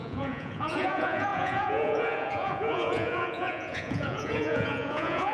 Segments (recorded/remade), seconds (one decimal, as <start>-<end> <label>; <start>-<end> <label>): 0.0-5.3 remade